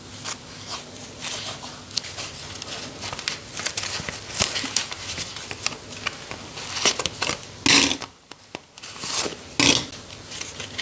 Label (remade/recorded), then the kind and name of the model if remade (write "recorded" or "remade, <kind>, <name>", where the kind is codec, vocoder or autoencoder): recorded